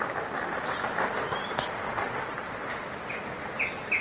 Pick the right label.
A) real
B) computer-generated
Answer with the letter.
A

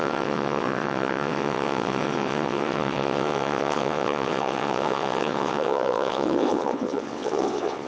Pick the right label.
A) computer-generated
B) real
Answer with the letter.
A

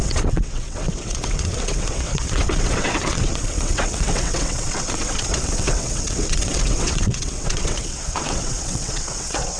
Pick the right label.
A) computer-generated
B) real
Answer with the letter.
A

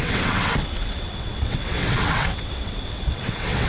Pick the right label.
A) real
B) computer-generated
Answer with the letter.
B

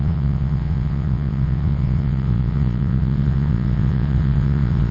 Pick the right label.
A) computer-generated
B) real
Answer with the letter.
A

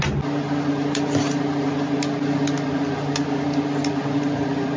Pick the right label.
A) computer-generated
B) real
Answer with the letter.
B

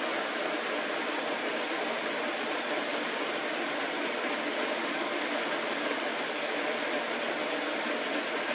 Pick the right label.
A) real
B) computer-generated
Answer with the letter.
A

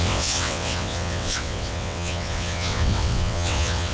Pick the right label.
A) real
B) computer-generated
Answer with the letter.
B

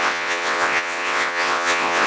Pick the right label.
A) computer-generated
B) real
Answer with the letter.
A